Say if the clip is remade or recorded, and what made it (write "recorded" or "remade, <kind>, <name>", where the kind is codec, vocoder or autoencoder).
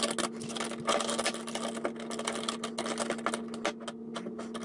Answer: recorded